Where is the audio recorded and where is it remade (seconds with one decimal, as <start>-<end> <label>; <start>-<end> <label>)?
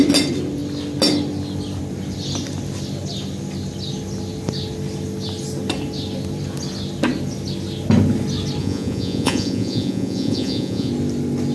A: 0.0-8.6 recorded; 8.6-10.9 remade; 10.9-11.5 recorded